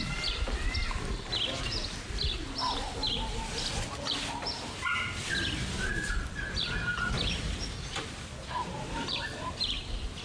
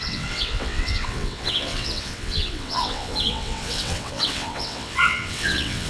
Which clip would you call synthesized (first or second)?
second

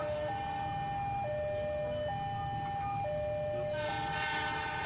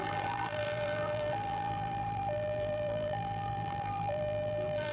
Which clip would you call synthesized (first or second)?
second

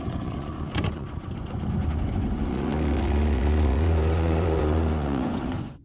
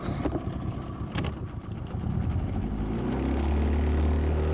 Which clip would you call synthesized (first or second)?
first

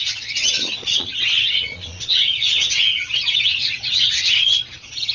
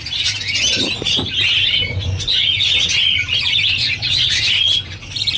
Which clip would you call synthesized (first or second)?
first